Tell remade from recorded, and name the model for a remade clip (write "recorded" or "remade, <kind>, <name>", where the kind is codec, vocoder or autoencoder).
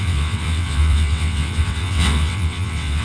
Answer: remade, vocoder, WaveNeXt